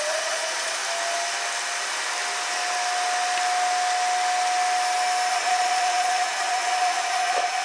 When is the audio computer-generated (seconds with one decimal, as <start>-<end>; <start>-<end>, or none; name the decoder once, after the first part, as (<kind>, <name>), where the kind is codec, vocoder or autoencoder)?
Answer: 0.0-0.8 (vocoder, Vocos); 5.3-7.6